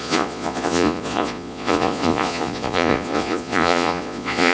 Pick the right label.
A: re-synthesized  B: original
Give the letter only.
A